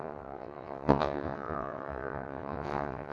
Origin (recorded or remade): remade